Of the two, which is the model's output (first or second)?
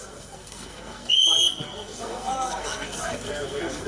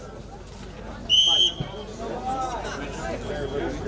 first